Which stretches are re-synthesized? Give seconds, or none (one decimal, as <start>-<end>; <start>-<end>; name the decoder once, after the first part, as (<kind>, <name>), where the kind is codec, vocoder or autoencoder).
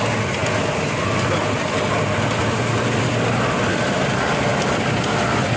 none